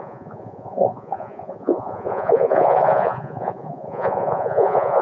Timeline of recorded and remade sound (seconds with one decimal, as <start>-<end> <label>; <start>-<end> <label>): 0.0-5.0 remade